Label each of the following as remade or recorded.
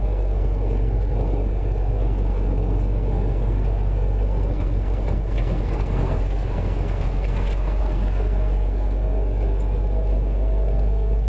remade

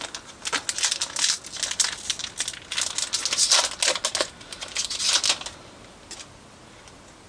recorded